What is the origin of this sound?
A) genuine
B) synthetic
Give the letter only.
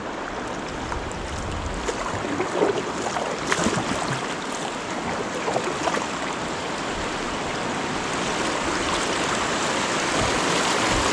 A